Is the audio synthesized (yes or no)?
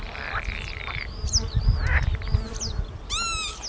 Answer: no